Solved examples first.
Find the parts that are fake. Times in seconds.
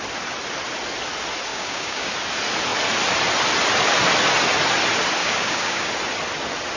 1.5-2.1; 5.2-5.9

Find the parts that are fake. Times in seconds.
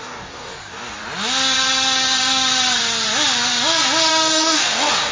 0.0-1.0; 4.1-5.1